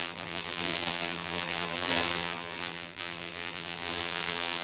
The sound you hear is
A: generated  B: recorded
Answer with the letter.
A